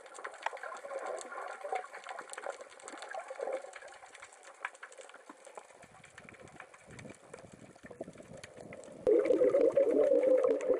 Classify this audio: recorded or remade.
recorded